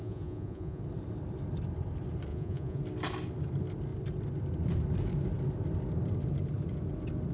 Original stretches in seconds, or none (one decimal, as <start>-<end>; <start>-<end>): 0.8-2.3; 2.8-7.3